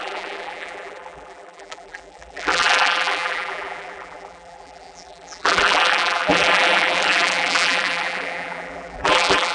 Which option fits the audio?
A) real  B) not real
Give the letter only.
B